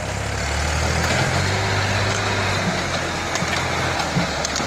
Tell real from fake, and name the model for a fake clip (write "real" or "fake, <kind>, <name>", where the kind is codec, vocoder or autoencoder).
real